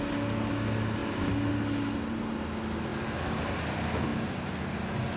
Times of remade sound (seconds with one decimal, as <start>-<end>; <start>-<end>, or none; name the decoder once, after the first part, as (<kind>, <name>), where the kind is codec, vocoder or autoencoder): none

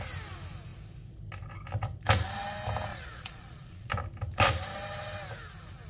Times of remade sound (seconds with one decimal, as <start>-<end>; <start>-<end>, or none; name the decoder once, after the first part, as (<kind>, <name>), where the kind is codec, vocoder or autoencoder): 2.9-3.9 (vocoder, Vocos)